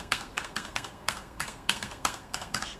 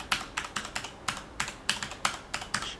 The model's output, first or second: first